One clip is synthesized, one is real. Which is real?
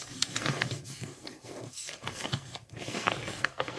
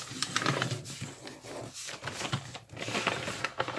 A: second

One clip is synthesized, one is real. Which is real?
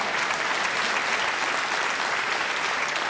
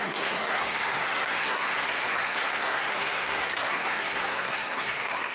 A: first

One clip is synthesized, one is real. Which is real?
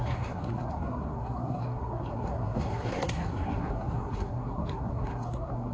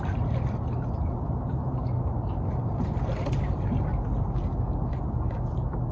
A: second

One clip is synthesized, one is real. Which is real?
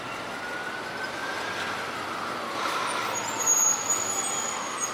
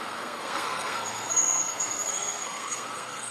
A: first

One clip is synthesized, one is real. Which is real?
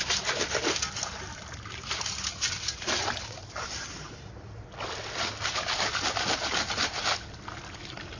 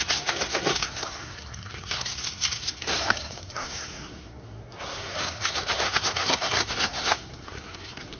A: first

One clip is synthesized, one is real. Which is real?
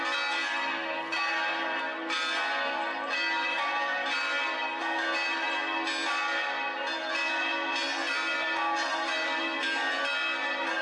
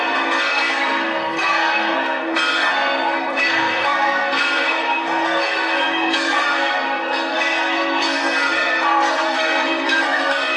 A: first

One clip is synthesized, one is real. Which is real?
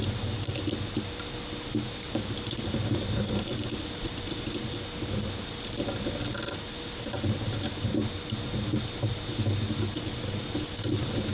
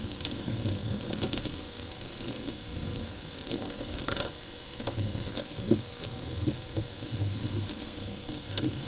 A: first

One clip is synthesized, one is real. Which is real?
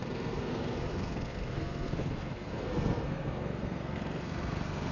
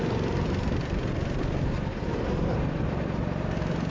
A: second